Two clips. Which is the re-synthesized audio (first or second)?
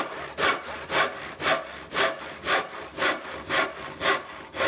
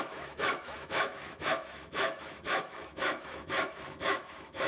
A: second